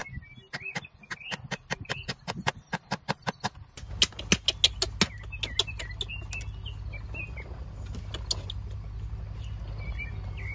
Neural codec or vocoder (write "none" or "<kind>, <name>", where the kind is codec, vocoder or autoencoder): none